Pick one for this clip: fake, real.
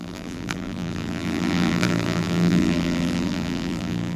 fake